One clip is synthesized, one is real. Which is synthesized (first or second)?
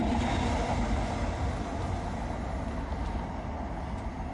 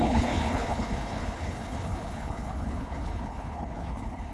second